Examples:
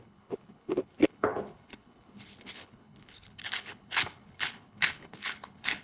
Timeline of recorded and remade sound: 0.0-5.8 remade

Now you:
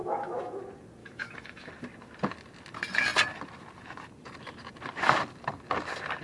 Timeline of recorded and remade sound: 0.0-0.6 remade; 0.6-1.0 recorded; 1.0-1.7 remade; 1.7-6.2 recorded

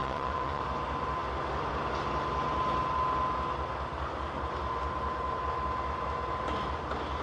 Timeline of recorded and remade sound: 0.0-0.6 remade; 0.6-7.2 recorded